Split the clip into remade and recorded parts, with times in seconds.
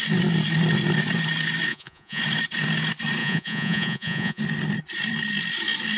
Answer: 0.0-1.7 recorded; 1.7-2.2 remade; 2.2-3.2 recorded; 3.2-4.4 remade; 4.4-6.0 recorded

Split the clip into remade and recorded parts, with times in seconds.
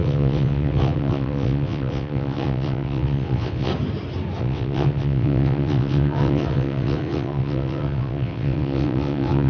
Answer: 0.0-3.7 remade; 3.7-4.4 recorded; 4.4-9.5 remade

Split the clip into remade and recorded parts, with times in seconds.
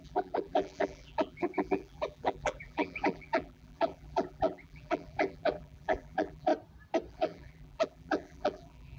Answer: 0.0-6.5 remade; 6.5-7.1 recorded; 7.1-9.0 remade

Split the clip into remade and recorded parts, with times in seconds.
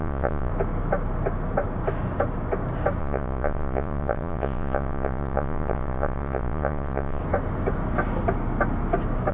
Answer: 0.0-0.5 remade; 0.5-3.0 recorded; 3.0-7.2 remade; 7.2-9.3 recorded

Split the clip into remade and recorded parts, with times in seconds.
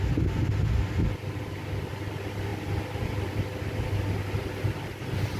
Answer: 0.0-5.4 recorded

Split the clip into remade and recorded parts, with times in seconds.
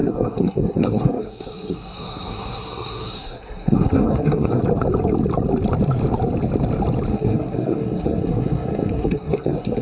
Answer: 0.0-4.6 remade; 4.6-7.1 recorded; 7.1-9.8 remade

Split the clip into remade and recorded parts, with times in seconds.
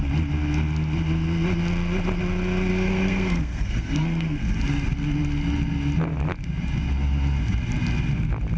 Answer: 0.0-2.7 recorded; 2.7-4.5 remade; 4.5-8.6 recorded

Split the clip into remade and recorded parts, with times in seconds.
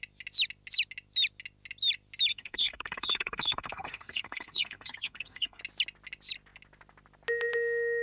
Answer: 0.0-2.3 recorded; 2.3-5.6 remade; 5.6-8.0 recorded